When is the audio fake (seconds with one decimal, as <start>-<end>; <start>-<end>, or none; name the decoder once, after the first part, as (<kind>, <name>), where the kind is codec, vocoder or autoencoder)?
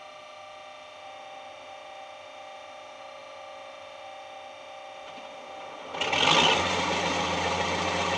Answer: none